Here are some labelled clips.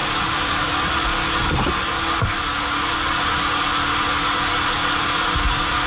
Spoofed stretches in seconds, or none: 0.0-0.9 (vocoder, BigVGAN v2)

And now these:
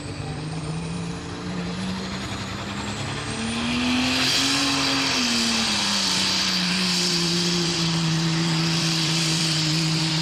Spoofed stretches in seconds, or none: 0.0-2.5 (vocoder, BigVGAN v2); 5.9-10.2

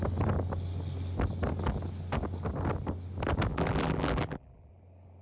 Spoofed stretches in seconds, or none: 3.5-4.7 (vocoder, BigVGAN v2)

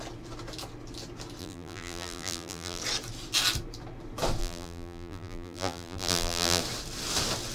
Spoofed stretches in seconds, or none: 1.4-2.8 (vocoder, BigVGAN v2); 4.4-6.6

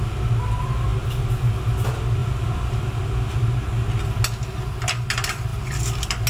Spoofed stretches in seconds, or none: 2.2-3.0 (vocoder, BigVGAN v2)

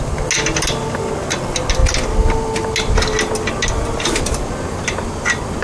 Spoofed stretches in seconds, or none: none

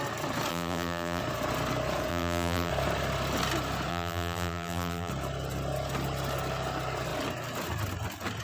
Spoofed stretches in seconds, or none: 0.5-1.2 (vocoder, BigVGAN v2); 2.1-2.7; 3.9-5.1

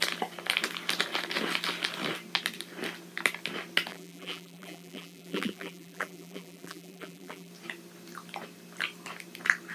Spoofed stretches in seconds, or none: 3.9-7.5 (vocoder, BigVGAN v2)